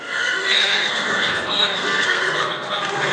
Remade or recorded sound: remade